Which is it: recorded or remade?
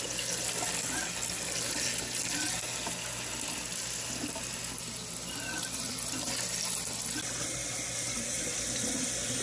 recorded